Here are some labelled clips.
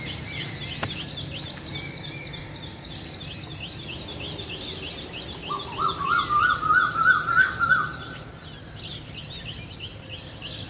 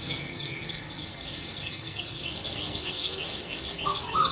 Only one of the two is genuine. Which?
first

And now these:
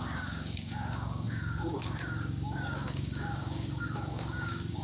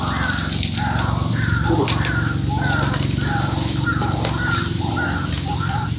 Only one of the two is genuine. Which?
second